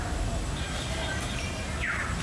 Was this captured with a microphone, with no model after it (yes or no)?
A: yes